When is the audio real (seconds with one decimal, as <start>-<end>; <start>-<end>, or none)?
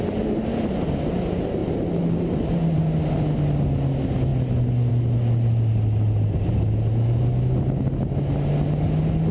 0.0-1.6; 2.8-9.3